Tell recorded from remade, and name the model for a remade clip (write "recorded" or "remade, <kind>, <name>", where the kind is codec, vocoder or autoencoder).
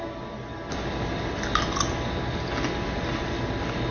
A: recorded